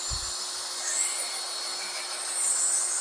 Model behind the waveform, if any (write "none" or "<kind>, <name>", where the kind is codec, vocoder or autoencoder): none